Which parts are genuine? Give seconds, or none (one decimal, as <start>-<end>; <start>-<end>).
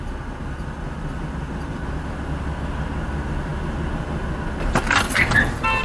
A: 0.0-5.8